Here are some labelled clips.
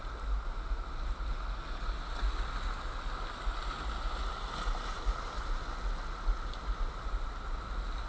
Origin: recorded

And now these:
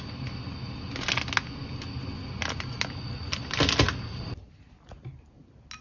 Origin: recorded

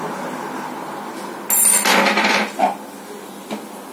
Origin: recorded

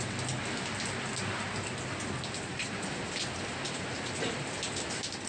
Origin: recorded